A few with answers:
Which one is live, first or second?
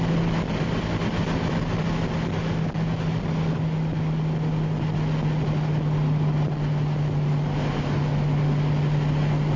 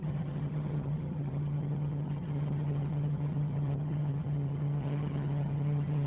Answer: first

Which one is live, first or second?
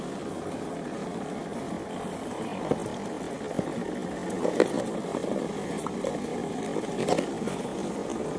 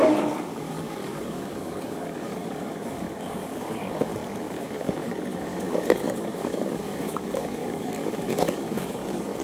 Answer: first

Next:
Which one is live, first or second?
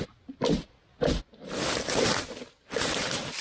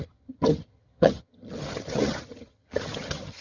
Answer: first